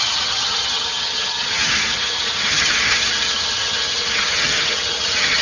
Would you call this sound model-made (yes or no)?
yes